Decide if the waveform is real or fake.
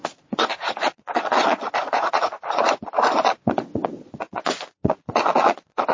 fake